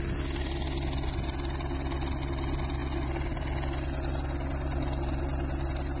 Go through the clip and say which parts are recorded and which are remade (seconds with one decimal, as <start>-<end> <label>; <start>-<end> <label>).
0.0-6.0 recorded

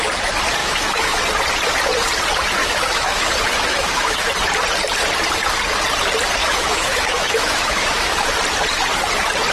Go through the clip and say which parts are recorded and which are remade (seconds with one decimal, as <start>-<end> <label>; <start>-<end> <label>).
0.0-0.6 recorded; 0.6-1.2 remade; 1.2-2.6 recorded; 2.6-3.3 remade; 3.3-3.7 recorded; 3.7-4.3 remade; 4.3-6.4 recorded; 6.4-8.4 remade; 8.4-9.5 recorded

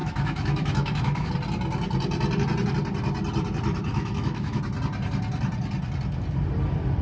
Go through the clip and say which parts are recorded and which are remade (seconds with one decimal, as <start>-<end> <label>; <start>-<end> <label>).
0.0-1.3 remade; 1.3-3.9 recorded; 3.9-4.6 remade; 4.6-7.0 recorded

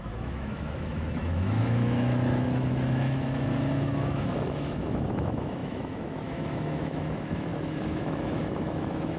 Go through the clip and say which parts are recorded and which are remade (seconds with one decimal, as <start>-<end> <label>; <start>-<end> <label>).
0.0-9.2 remade